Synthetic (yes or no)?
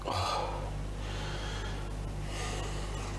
no